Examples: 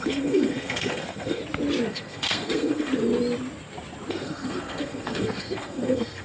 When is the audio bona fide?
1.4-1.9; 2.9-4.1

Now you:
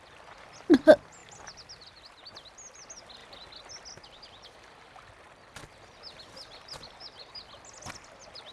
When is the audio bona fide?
0.0-8.5

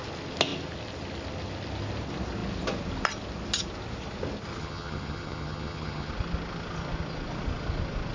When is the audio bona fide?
0.0-4.6; 6.1-8.1

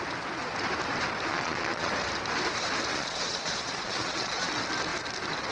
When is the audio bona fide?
0.0-1.3; 1.9-2.9; 4.5-5.5

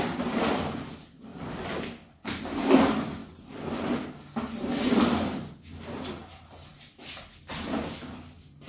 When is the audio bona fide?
0.0-8.7

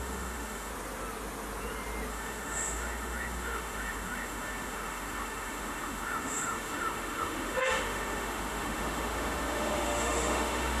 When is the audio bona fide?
0.7-2.1